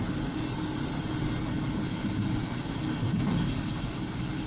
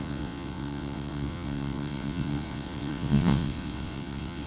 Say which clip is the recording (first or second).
first